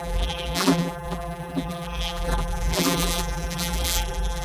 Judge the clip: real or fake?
fake